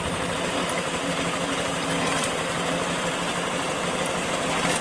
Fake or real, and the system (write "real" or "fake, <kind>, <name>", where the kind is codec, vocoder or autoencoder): fake, vocoder, BigVGAN v2